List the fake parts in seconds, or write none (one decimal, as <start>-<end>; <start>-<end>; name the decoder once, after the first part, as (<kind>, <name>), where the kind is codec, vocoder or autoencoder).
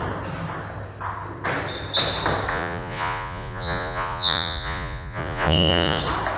2.5-6.0 (vocoder, Vocos)